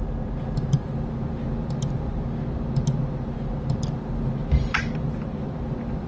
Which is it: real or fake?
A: real